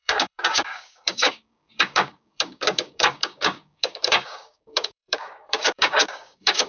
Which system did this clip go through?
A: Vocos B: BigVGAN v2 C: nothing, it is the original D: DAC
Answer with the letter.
D